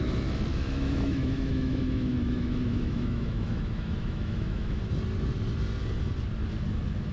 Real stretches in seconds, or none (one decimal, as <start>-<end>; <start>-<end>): 0.0-0.5; 4.8-7.1

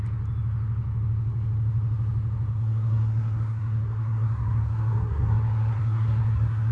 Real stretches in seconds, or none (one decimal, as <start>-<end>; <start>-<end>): 0.0-2.5